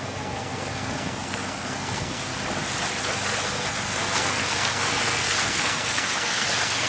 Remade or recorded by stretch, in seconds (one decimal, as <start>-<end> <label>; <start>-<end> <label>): 0.0-2.3 remade; 2.3-3.0 recorded; 3.0-6.9 remade